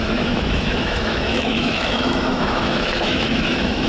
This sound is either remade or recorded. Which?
remade